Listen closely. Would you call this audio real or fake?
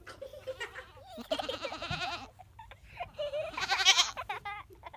real